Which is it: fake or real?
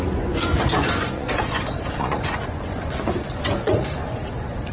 fake